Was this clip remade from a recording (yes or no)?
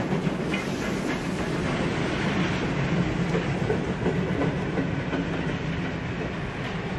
no